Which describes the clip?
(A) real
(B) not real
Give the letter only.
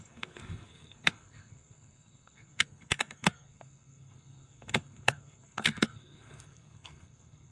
B